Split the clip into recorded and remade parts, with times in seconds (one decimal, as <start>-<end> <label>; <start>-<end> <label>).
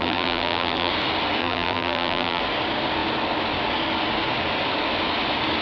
0.0-0.9 remade; 0.9-1.4 recorded; 1.4-2.4 remade; 2.4-5.6 recorded